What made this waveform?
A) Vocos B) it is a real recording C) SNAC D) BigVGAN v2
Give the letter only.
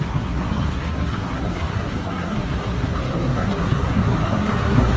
C